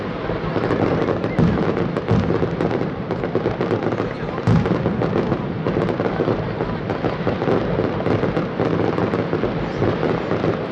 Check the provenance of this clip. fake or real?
real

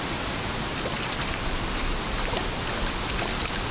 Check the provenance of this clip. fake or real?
real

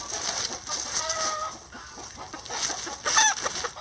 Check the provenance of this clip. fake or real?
real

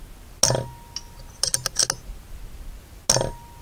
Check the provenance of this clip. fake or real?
real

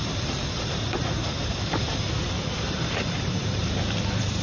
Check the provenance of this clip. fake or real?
fake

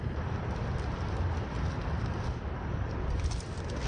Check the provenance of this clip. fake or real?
real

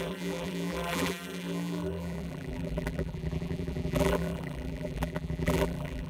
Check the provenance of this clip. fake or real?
fake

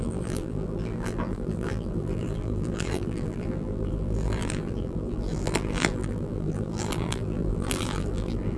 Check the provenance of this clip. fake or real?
fake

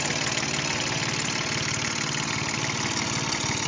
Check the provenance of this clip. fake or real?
real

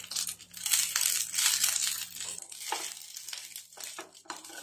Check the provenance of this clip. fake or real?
real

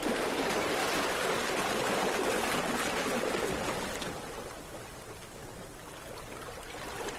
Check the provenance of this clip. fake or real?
real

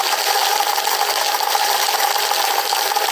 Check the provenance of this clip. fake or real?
real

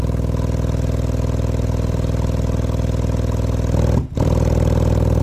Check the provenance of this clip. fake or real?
real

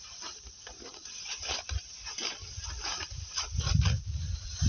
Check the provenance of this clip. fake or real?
fake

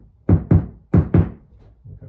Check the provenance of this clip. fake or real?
fake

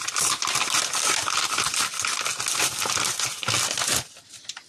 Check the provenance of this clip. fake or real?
real